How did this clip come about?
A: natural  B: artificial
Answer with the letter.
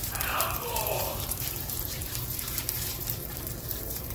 B